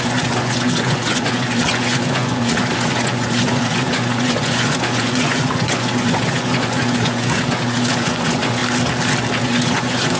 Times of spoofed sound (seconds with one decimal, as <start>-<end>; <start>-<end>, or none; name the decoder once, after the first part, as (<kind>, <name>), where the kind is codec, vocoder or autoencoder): 0.0-8.6 (vocoder, Vocos); 9.4-10.2